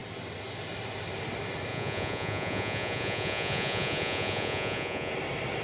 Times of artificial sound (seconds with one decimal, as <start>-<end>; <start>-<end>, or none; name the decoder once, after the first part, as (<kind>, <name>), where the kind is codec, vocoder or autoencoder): 1.7-5.1 (vocoder, Vocos)